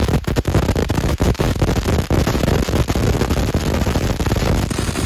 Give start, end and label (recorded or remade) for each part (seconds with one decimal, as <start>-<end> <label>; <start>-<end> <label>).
0.0-0.8 recorded; 0.8-1.7 remade; 1.7-5.1 recorded